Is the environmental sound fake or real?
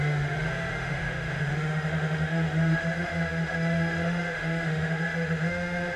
fake